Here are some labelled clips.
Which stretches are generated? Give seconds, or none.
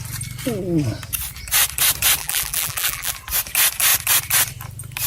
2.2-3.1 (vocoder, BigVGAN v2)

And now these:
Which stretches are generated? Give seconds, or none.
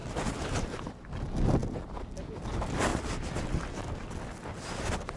0.0-1.1 (vocoder, BigVGAN v2); 1.6-2.5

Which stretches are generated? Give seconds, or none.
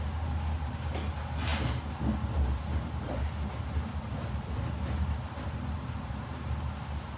none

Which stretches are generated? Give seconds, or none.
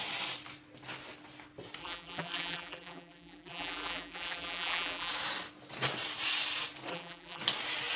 1.8-5.1 (vocoder, BigVGAN v2); 6.9-7.4